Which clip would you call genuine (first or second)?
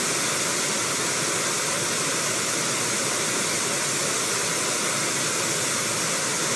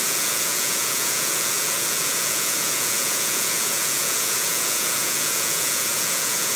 first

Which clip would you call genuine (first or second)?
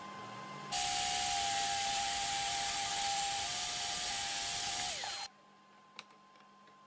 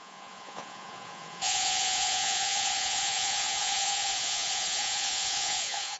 first